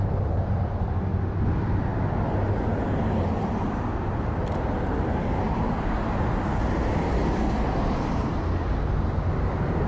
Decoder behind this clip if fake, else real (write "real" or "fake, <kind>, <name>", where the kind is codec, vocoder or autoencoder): real